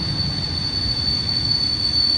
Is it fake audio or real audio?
fake